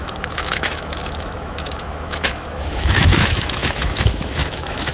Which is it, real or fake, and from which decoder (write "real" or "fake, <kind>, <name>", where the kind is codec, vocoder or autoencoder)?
fake, autoencoder, DAC-VAE